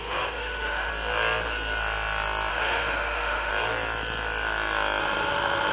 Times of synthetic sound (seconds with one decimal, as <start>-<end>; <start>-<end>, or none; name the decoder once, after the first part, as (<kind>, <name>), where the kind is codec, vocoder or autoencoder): 0.0-0.9 (autoencoder, DAC-VAE); 2.5-3.5; 5.0-5.7